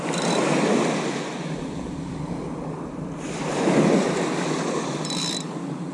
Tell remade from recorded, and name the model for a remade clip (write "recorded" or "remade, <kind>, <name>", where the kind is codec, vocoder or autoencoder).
recorded